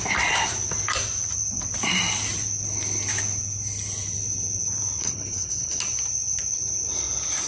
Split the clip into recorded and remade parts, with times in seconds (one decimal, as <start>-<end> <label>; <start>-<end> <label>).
0.0-5.0 recorded; 5.0-5.8 remade; 5.8-7.5 recorded